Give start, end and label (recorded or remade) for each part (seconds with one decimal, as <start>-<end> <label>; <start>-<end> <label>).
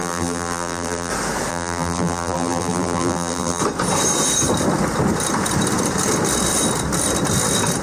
0.0-1.1 remade; 1.1-1.5 recorded; 1.5-3.6 remade; 3.6-7.8 recorded